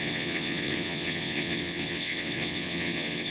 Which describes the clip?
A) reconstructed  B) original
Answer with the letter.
A